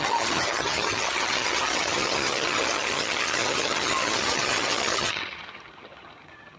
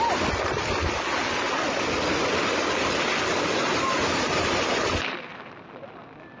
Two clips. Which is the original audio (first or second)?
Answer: second